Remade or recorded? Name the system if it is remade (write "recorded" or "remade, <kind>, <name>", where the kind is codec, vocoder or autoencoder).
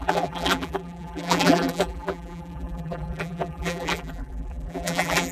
remade, vocoder, BigVGAN v2